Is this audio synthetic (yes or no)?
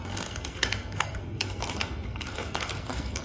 yes